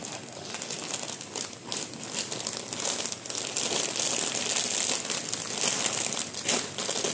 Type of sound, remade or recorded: recorded